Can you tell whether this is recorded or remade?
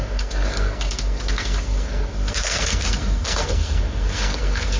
remade